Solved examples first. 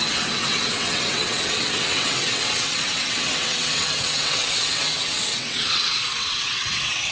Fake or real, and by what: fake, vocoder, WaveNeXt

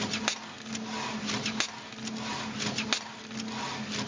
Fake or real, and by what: real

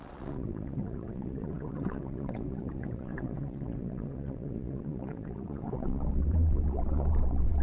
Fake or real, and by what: fake, vocoder, WaveNeXt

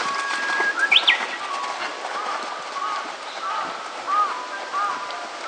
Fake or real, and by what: real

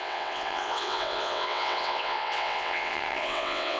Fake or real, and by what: fake, vocoder, WaveNeXt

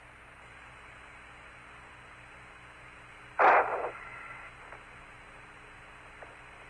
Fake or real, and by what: real